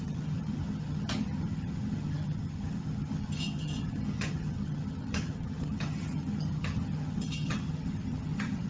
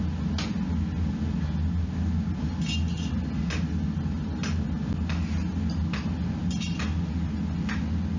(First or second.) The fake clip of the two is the first